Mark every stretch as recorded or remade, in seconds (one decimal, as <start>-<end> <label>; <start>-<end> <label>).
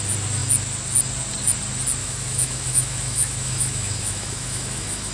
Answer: 0.0-2.0 recorded; 2.0-5.1 remade